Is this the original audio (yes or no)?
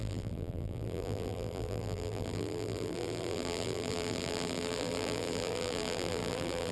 no